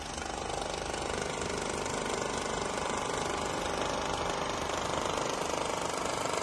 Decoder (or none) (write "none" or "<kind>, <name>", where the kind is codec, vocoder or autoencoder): vocoder, BigVGAN v2